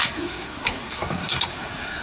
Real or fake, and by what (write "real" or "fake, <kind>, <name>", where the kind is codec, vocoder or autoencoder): fake, codec, SNAC